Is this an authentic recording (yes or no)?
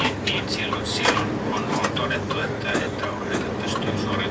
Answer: yes